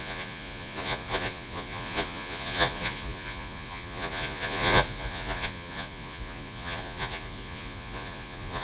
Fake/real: fake